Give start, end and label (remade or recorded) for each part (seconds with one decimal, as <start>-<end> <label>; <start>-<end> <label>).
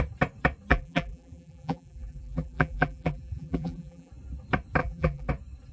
0.0-0.7 recorded; 0.7-4.1 remade; 4.1-4.8 recorded; 4.8-5.3 remade; 5.3-5.7 recorded